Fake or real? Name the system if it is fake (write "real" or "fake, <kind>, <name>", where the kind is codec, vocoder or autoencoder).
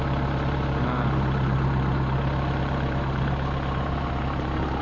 fake, vocoder, BigVGAN v2